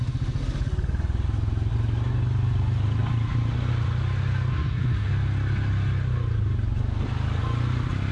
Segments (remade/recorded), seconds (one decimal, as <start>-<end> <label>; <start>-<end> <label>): 0.0-4.5 recorded; 4.5-5.1 remade; 5.1-8.1 recorded